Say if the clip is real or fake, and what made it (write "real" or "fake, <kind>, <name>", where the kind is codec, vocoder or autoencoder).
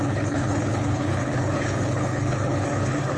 fake, codec, HILCodec